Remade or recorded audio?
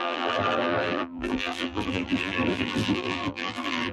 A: remade